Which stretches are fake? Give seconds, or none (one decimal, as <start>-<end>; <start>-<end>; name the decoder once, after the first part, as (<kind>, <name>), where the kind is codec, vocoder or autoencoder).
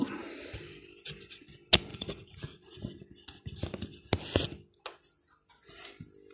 1.9-2.8 (vocoder, Vocos)